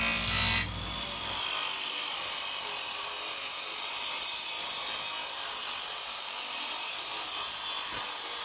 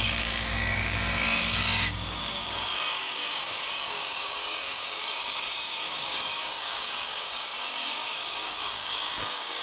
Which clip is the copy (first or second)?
second